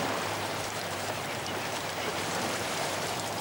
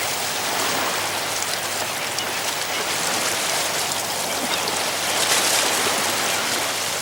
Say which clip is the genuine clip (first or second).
second